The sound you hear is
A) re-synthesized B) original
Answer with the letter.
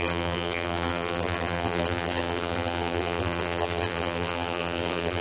A